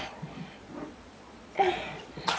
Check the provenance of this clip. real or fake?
fake